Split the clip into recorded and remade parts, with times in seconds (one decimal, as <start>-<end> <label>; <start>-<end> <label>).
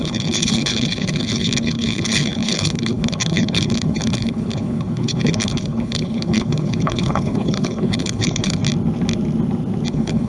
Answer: 0.0-8.6 remade; 8.6-9.9 recorded; 9.9-10.3 remade